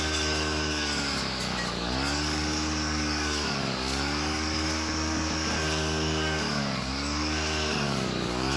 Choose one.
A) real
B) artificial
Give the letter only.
B